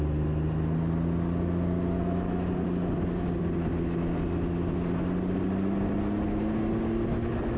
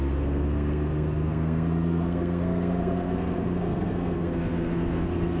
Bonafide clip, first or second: first